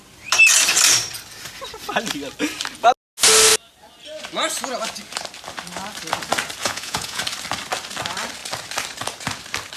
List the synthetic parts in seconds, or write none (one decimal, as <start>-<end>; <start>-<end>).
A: 6.6-7.2